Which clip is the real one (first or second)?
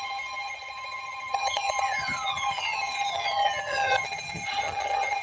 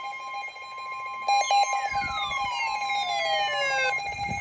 second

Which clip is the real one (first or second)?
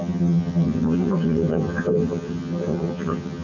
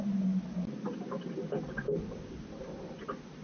second